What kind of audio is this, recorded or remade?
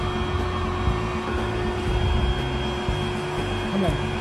recorded